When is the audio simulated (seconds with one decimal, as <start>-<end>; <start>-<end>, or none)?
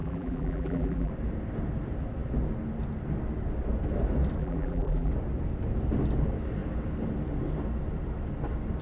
0.0-1.1; 4.4-5.1